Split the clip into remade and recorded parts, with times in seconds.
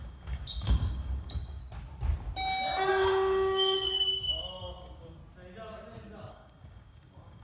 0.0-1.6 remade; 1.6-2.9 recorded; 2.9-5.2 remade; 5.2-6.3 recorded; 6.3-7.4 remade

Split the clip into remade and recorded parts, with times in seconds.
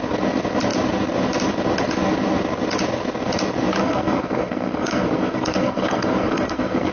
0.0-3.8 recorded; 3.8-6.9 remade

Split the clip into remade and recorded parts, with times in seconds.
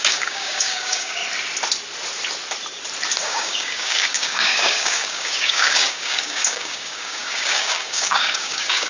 0.0-1.2 remade; 1.2-3.2 recorded; 3.2-8.9 remade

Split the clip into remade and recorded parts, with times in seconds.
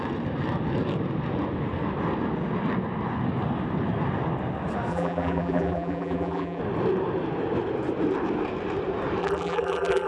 0.0-4.9 recorded; 4.9-6.6 remade; 6.6-9.2 recorded; 9.2-10.1 remade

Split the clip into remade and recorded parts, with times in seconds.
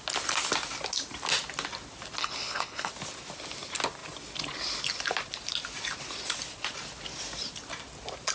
0.0-2.2 recorded; 2.2-2.9 remade; 2.9-8.3 recorded